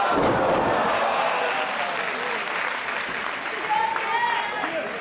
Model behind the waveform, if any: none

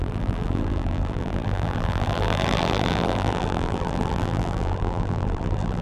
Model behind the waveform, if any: vocoder, BigVGAN v2